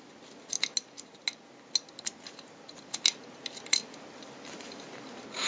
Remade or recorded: recorded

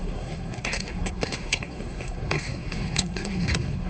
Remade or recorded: remade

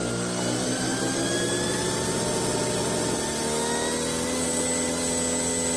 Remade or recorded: recorded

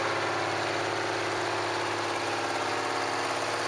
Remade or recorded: recorded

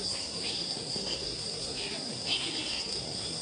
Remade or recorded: remade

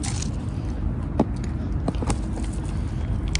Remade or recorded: recorded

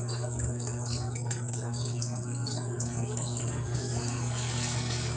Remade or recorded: remade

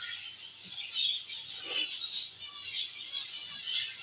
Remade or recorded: remade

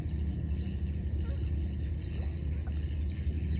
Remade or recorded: recorded